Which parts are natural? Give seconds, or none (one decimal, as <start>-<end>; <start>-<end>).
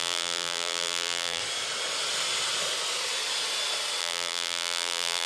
1.4-4.0